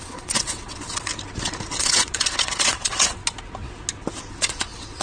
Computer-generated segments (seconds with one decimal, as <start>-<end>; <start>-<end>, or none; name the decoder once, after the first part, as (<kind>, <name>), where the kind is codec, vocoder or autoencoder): 0.0-1.1 (vocoder, WaveNeXt); 1.8-3.2; 4.3-5.0